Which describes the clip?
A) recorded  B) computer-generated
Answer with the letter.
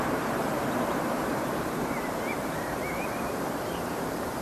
B